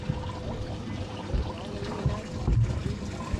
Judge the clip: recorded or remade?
recorded